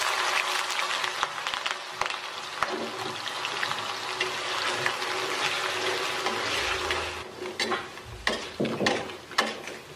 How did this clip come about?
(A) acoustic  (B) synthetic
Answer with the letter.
A